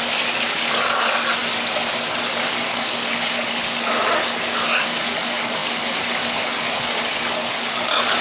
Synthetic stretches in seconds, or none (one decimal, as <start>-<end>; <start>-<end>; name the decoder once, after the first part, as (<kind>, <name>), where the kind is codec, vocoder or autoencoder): 0.0-1.4 (codec, DAC); 2.3-8.2